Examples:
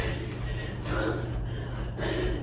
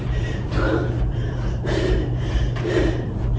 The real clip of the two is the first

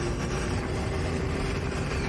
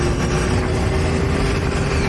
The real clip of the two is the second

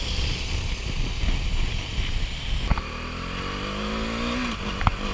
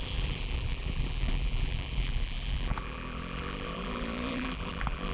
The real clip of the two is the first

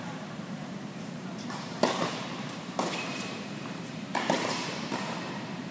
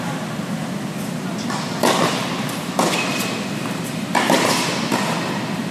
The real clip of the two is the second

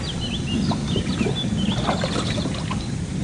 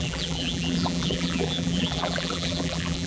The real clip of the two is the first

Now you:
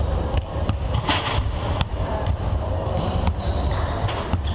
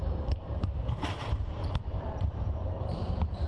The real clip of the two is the first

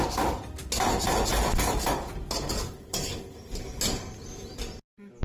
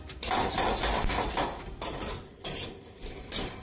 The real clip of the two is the first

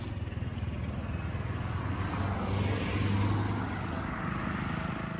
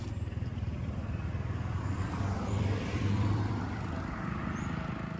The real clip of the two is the first